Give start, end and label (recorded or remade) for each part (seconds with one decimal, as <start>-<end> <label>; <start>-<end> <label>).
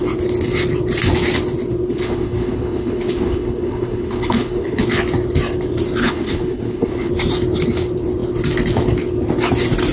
0.0-1.9 recorded; 1.9-5.0 remade; 5.0-6.0 recorded; 6.0-7.1 remade; 7.1-9.9 recorded